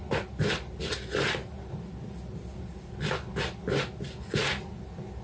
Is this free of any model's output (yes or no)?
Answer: yes